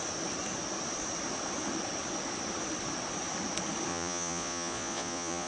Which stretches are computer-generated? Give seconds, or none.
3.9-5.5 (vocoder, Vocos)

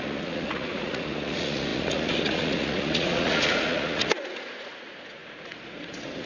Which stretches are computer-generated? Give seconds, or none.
0.0-6.3 (vocoder, Vocos)

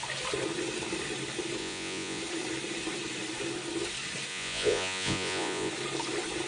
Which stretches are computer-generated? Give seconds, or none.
1.6-2.2 (vocoder, Vocos); 4.3-5.7

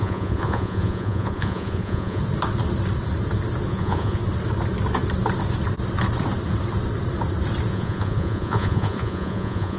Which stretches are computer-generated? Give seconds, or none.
0.0-2.2 (vocoder, Vocos); 3.7-4.2; 7.7-9.8

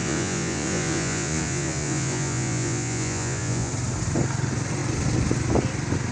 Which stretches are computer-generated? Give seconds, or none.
0.0-3.7 (vocoder, Vocos)

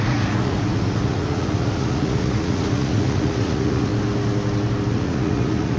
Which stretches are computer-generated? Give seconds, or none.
0.0-3.9 (vocoder, Vocos); 4.9-5.8

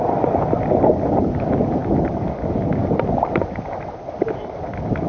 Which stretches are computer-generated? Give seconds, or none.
none

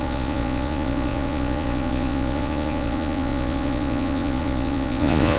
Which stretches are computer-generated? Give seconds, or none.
0.0-5.4 (vocoder, Vocos)